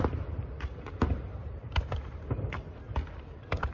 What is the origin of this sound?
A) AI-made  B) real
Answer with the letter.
A